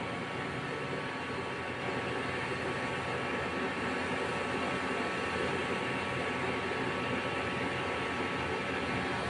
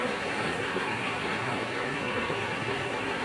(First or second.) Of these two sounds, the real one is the first